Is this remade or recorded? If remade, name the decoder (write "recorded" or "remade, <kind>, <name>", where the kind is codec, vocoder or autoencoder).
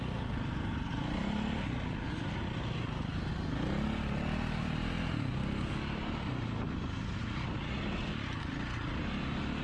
recorded